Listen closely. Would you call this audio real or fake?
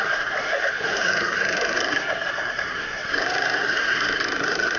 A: fake